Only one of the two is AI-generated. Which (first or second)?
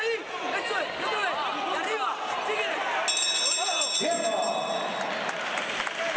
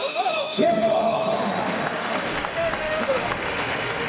second